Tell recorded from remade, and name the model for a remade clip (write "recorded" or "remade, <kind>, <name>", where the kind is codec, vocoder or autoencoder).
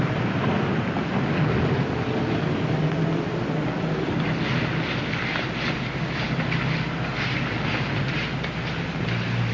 recorded